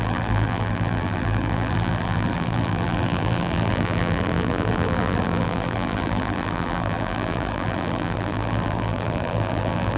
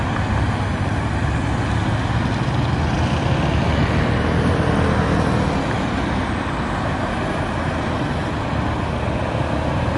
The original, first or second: second